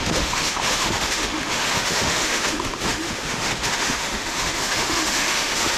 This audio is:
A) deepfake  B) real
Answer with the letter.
A